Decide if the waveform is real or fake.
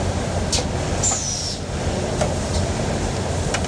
real